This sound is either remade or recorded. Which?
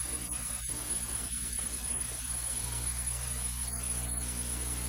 remade